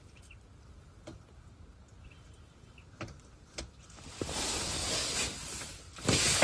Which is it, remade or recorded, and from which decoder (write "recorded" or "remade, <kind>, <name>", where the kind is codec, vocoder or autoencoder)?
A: recorded